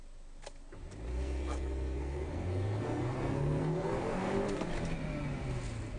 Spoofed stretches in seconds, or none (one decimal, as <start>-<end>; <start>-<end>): 1.1-4.7